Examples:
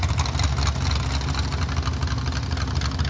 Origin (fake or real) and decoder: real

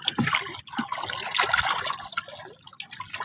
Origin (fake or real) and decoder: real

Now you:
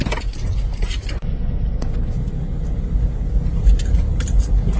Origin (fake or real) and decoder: real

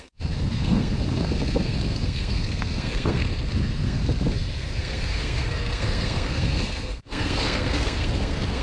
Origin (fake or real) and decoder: fake, codec, SNAC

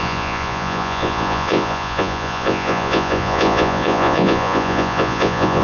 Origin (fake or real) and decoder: fake, vocoder, Vocos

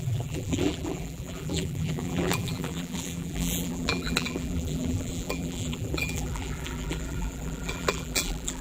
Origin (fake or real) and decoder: fake, vocoder, BigVGAN v2